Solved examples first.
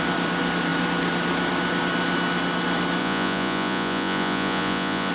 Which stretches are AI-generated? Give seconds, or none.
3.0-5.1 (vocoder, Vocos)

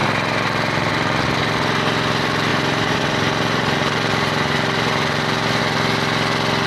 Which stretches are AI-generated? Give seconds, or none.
0.0-0.9 (vocoder, BigVGAN v2); 2.5-5.6

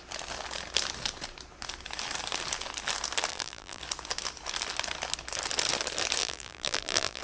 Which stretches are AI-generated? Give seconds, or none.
3.3-3.8 (vocoder, BigVGAN v2); 6.2-7.2

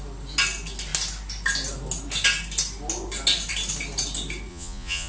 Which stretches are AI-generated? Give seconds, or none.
4.5-5.1 (vocoder, Vocos)

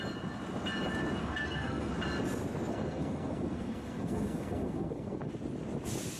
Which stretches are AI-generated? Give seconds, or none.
1.2-1.9 (codec, SNAC); 2.7-5.3

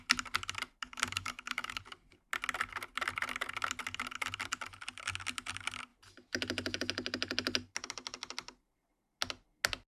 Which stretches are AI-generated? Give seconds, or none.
0.8-1.8 (codec, DAC)

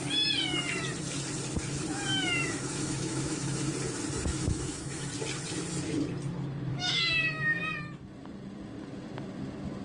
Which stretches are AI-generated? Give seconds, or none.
2.1-3.7 (autoencoder, DAC-VAE); 4.3-5.1; 6.7-7.6

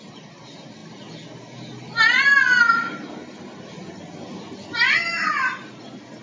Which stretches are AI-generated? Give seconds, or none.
none